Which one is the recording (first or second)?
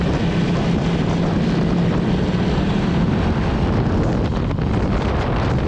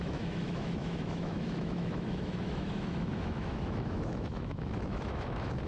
first